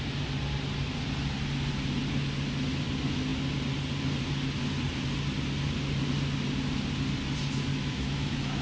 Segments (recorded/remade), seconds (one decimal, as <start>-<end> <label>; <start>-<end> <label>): 0.0-7.7 recorded; 7.7-8.6 remade